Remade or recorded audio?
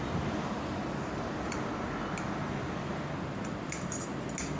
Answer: recorded